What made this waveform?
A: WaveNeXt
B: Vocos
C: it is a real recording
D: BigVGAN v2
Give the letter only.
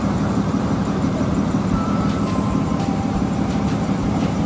D